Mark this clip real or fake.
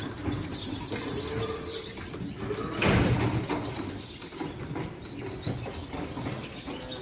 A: real